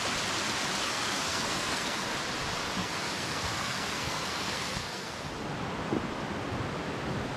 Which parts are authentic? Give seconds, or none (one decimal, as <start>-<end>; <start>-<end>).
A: 0.0-0.8; 2.1-2.8; 5.3-7.4